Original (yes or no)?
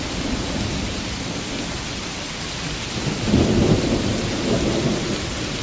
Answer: yes